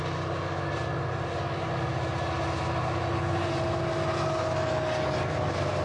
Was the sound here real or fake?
real